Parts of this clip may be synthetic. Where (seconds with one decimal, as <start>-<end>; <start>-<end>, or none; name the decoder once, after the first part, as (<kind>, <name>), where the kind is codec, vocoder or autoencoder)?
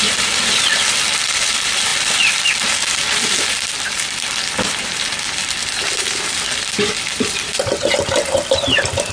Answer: 0.0-9.1 (vocoder, BigVGAN v2)